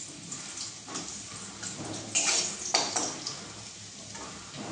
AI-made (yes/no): no